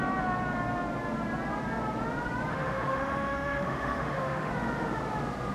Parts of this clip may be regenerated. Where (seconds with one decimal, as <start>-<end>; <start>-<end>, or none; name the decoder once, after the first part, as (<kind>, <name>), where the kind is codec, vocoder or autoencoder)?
2.5-4.5 (autoencoder, DAC-VAE)